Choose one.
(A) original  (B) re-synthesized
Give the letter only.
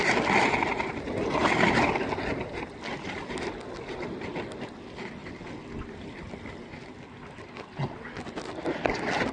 A